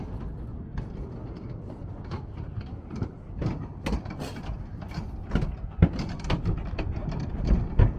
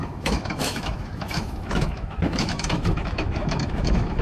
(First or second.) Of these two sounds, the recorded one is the first